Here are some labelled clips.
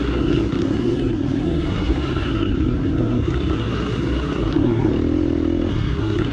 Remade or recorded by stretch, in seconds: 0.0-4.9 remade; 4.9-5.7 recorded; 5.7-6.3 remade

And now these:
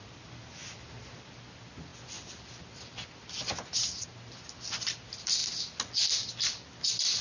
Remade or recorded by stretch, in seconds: 0.0-7.2 recorded

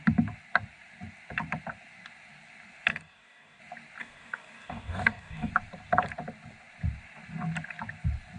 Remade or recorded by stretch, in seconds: 0.0-2.9 recorded; 2.9-3.6 remade; 3.6-4.0 recorded; 4.0-5.5 remade; 5.5-8.4 recorded

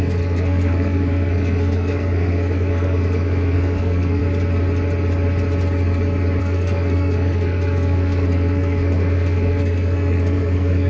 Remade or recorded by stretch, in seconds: 0.0-4.2 remade; 4.2-6.4 recorded; 6.4-10.9 remade

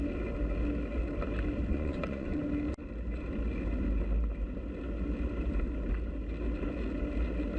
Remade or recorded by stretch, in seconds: 0.0-1.7 recorded; 1.7-2.4 remade; 2.4-7.6 recorded

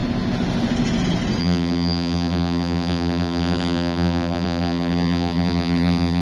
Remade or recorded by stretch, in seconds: 0.0-1.4 recorded; 1.4-6.2 remade

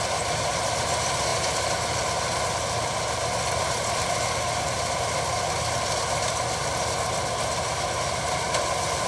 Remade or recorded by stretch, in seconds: 0.0-9.1 recorded